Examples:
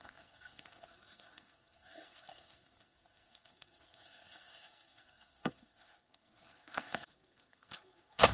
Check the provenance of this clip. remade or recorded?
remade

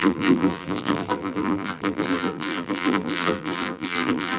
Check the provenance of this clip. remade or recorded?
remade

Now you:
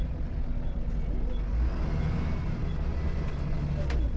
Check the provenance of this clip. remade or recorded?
recorded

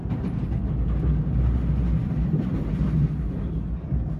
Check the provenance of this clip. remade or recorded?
recorded